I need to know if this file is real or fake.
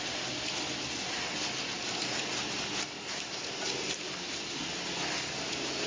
real